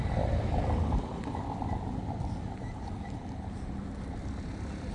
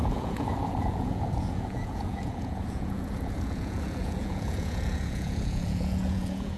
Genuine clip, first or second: first